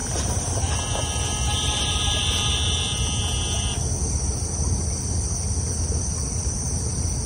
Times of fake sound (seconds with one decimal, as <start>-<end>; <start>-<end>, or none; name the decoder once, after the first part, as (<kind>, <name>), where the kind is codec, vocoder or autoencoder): none